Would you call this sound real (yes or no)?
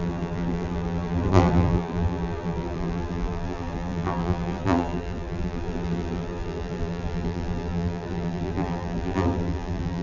no